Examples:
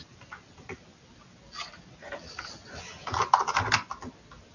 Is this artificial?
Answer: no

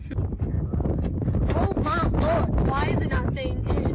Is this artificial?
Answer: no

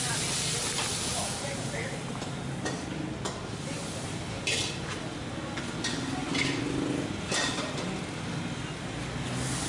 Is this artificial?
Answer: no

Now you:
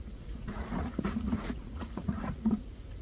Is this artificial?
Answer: yes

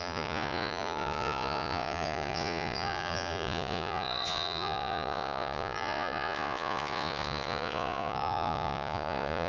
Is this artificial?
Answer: yes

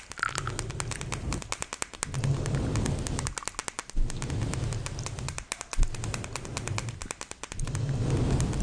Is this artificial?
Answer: no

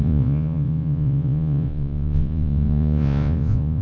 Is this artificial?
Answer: yes